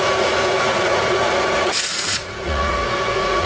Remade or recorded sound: remade